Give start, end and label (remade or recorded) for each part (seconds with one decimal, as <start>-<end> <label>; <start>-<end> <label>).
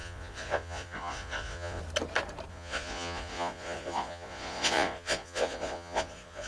0.0-1.8 remade; 1.8-2.5 recorded; 2.5-6.5 remade